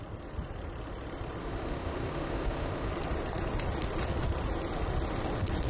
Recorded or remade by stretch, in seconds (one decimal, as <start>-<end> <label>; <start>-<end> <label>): 0.0-1.4 recorded; 1.4-2.9 remade; 2.9-5.7 recorded